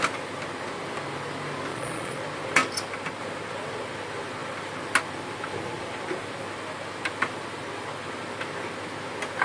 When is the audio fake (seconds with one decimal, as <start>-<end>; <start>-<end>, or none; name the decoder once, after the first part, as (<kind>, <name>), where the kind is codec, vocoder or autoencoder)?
1.7-2.2 (vocoder, Vocos)